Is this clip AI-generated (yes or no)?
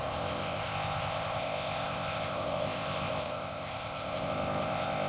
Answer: yes